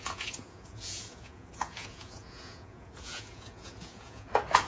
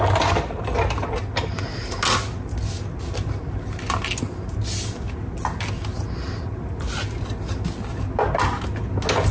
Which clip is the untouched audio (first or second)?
second